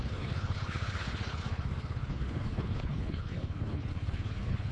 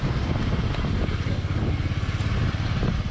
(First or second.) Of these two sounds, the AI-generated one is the first